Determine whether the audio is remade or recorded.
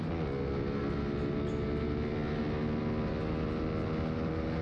recorded